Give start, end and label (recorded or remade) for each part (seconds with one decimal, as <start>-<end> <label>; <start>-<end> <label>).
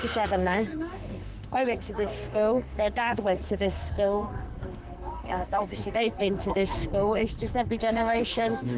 0.0-8.8 remade